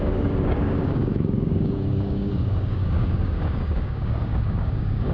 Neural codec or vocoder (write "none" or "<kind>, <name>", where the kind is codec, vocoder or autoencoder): codec, DAC